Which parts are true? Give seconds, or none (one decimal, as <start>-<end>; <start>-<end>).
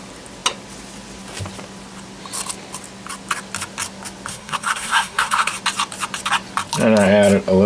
0.0-4.3; 5.5-7.7